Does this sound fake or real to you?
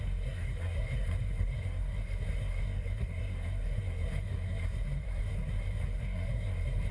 fake